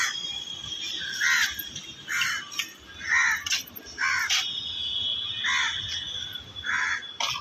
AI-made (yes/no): no